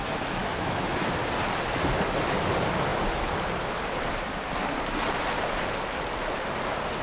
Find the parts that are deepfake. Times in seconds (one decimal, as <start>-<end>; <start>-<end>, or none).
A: 0.4-1.0